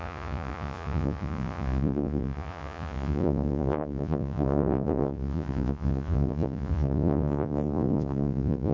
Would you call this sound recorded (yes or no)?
no